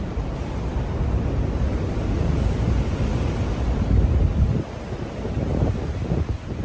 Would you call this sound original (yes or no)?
no